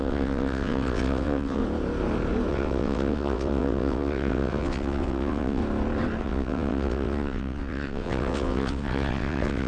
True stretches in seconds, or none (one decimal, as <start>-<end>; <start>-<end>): 1.6-2.5; 5.6-6.2